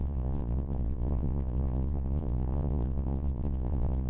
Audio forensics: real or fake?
fake